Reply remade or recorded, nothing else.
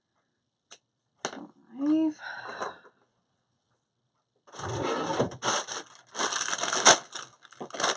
recorded